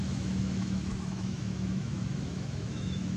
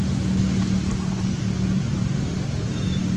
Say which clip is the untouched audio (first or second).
second